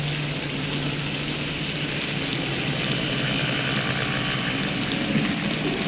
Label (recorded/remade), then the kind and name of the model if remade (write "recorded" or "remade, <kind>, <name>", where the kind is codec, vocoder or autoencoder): recorded